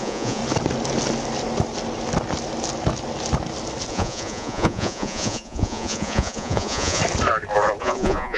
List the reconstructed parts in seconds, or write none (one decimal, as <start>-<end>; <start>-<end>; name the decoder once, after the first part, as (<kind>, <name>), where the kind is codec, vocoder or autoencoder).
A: 0.0-0.4 (vocoder, Vocos); 3.9-7.0; 7.8-8.4